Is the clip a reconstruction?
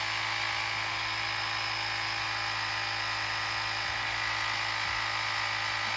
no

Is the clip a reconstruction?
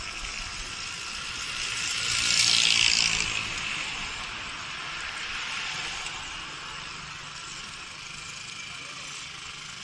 no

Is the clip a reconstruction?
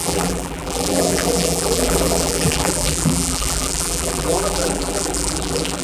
yes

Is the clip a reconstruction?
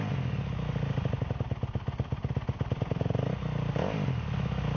no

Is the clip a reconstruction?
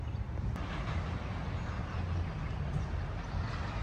no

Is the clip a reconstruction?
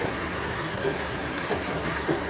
yes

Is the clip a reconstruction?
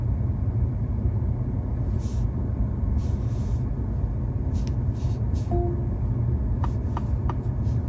no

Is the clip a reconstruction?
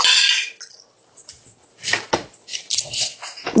no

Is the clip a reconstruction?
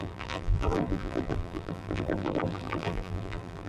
yes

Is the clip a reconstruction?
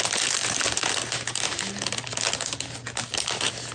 no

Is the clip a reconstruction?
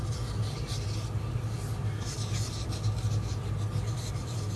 no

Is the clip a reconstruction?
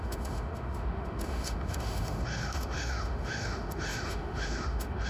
yes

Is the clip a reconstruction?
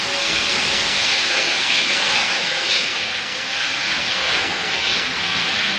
yes